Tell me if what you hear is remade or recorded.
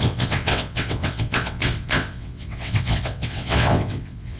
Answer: remade